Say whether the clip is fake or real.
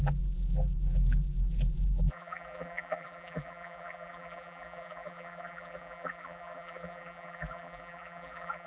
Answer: fake